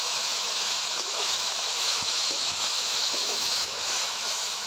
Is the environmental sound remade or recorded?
remade